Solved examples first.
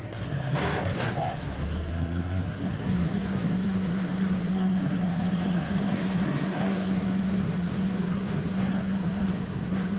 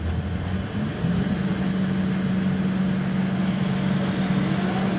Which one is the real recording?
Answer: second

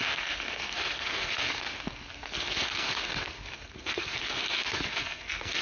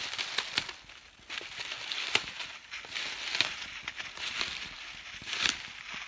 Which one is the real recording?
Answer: second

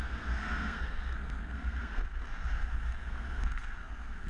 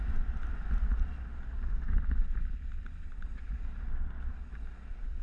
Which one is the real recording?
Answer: second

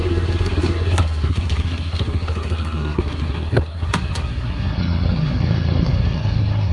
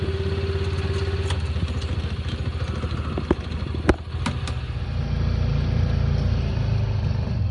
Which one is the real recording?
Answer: second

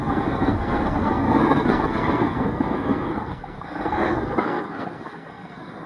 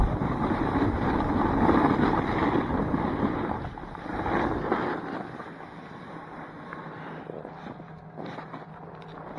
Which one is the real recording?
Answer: second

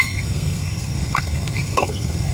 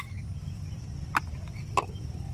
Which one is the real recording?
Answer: second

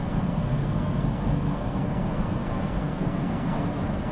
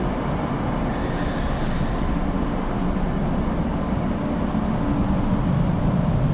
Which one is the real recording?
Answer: second